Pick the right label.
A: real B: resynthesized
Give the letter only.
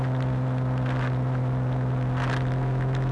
A